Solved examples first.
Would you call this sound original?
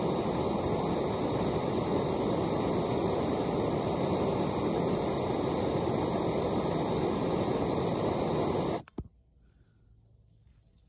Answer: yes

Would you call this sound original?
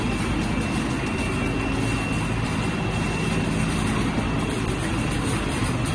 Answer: yes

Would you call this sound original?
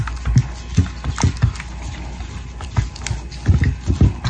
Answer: yes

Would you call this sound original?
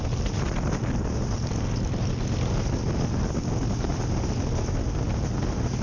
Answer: yes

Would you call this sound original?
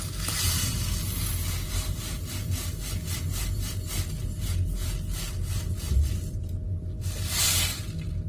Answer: yes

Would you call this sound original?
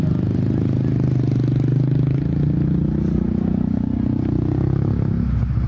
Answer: yes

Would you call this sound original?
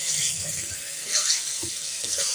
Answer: no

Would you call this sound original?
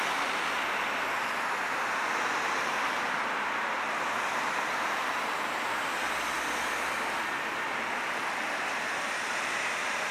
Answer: yes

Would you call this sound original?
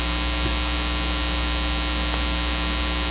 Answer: yes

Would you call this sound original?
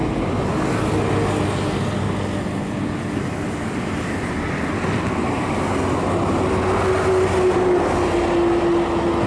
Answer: yes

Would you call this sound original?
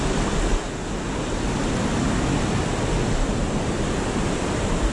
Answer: yes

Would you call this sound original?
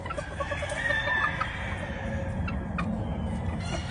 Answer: yes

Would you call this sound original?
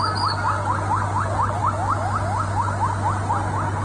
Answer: yes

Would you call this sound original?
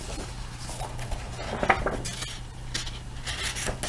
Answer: yes